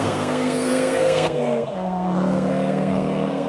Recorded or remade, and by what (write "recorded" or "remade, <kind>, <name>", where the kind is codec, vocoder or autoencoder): remade, codec, SNAC